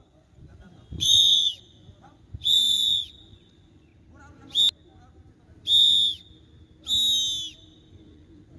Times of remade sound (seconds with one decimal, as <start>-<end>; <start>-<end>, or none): 0.0-3.9; 7.9-8.6